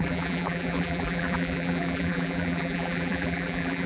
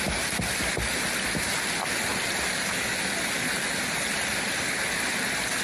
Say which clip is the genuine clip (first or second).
second